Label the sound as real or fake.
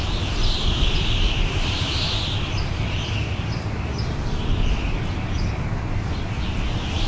real